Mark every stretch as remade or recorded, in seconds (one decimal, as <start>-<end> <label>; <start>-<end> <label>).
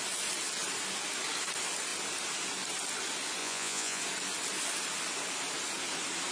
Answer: 0.0-3.4 recorded; 3.4-4.0 remade; 4.0-6.3 recorded